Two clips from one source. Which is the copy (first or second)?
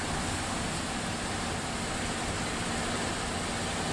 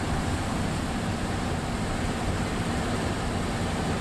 second